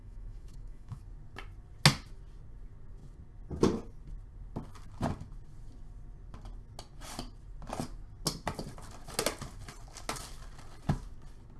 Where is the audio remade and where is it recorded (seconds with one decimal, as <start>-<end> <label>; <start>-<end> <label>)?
0.0-1.0 remade; 1.0-11.6 recorded